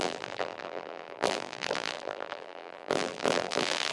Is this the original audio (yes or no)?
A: no